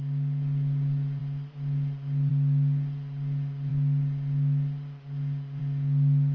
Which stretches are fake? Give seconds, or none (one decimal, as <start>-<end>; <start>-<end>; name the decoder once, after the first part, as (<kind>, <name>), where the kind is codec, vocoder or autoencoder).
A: none